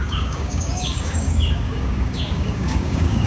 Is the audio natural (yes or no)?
no